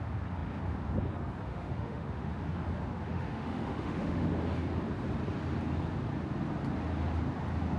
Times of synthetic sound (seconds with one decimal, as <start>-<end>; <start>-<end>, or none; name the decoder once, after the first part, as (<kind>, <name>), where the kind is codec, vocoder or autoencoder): 1.5-2.3 (autoencoder, DAC-VAE); 3.1-4.3